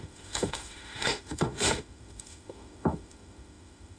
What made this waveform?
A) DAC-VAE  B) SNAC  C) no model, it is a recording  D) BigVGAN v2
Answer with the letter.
A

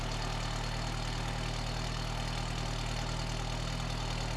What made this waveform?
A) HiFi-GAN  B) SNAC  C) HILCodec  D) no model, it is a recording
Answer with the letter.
D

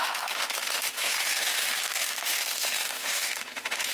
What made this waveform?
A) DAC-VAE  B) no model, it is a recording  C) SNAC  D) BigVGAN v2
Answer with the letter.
A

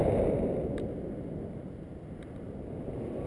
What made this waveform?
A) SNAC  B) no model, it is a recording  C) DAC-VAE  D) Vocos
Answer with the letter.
B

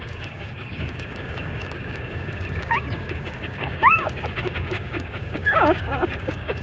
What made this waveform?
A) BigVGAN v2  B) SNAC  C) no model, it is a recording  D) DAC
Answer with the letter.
D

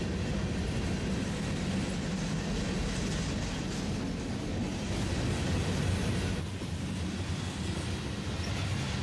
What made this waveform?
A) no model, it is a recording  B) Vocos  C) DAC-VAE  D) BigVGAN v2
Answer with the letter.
A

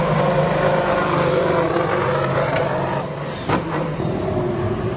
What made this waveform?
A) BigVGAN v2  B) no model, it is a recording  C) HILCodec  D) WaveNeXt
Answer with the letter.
A